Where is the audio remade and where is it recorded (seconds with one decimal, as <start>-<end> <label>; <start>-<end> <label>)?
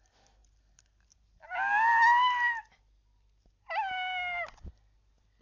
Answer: 0.0-5.4 recorded